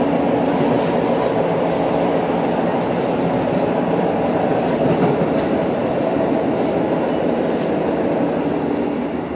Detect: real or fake real